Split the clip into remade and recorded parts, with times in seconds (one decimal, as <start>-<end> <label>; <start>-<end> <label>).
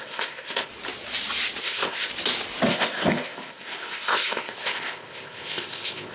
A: 0.0-0.7 remade; 0.7-1.6 recorded; 1.6-2.1 remade; 2.1-2.7 recorded; 2.7-6.1 remade